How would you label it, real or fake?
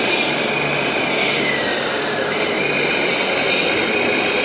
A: real